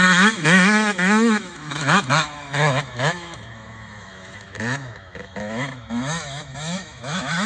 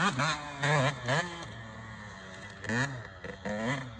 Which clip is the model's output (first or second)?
first